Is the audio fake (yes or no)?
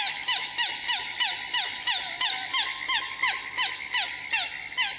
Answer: no